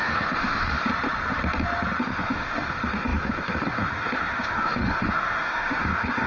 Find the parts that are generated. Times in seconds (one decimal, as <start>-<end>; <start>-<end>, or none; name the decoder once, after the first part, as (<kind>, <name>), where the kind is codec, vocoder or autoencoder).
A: 0.0-0.9 (autoencoder, DAC-VAE); 2.0-6.3